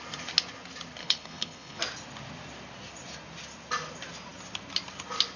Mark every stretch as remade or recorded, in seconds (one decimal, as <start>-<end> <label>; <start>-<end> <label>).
0.0-1.0 recorded; 1.0-1.8 remade; 1.8-5.4 recorded